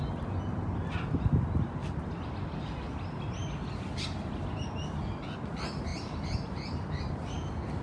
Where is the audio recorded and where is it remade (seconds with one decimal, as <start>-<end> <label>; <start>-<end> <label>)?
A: 0.0-5.9 recorded; 5.9-7.1 remade; 7.1-7.8 recorded